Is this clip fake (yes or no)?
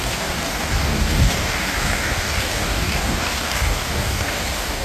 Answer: yes